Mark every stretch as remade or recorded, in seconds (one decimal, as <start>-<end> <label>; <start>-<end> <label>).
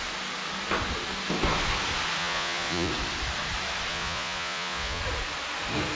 0.0-2.2 recorded; 2.2-2.9 remade; 2.9-3.9 recorded; 3.9-5.0 remade; 5.0-5.9 recorded